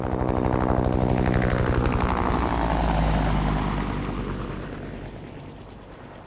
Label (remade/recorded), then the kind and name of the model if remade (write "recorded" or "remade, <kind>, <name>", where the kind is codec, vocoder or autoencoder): recorded